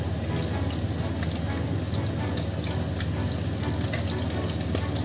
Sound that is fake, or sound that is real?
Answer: real